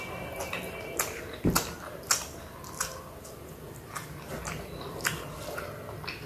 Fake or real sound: real